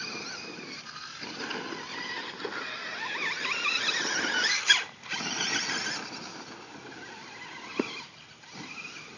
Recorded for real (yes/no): yes